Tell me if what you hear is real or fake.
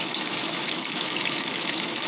fake